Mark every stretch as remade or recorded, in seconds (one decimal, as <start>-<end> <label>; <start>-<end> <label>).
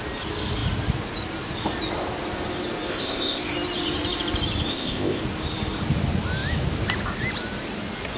0.0-2.9 recorded; 2.9-3.4 remade; 3.4-4.7 recorded; 4.7-5.2 remade; 5.2-8.2 recorded